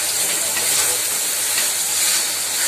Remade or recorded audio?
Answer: recorded